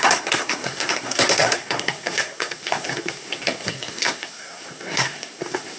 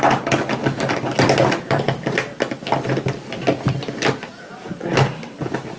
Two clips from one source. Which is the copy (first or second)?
first